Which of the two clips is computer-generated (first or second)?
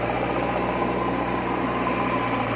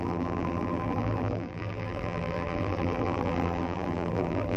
second